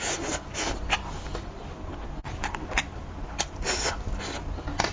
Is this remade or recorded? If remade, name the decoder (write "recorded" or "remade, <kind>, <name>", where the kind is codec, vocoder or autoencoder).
recorded